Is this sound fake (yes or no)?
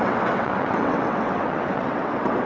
yes